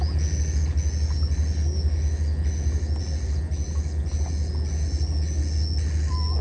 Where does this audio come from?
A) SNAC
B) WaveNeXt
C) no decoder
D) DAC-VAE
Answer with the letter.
C